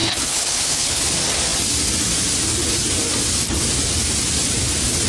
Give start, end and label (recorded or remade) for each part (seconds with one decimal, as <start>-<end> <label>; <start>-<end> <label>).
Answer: 0.0-1.0 remade; 1.0-5.1 recorded